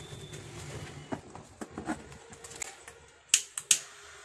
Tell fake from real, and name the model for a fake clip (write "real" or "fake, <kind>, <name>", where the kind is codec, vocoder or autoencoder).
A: real